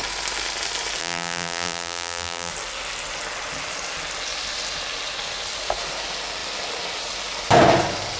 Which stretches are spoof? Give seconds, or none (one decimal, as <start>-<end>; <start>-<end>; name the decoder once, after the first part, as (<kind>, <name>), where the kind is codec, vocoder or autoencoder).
1.0-2.5 (vocoder, BigVGAN v2)